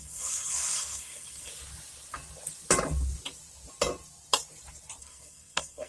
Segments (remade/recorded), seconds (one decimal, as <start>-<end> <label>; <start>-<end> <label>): 0.0-1.5 remade; 1.5-5.0 recorded; 5.0-5.9 remade